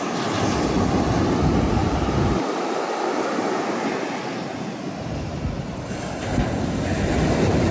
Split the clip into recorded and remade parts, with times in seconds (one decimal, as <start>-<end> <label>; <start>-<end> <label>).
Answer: 0.0-1.8 recorded; 1.8-3.0 remade; 3.0-7.7 recorded